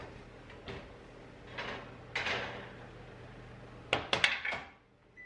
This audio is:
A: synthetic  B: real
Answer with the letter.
B